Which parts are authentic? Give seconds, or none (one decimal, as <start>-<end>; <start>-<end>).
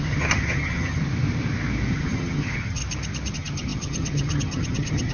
1.0-1.9; 2.8-3.3